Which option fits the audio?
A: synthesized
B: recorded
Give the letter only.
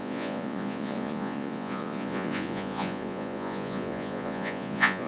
A